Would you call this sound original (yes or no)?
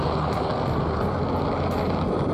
yes